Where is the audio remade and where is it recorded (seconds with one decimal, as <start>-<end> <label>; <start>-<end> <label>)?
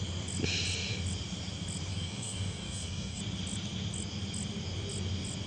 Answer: 0.0-1.9 recorded; 1.9-3.2 remade; 3.2-5.5 recorded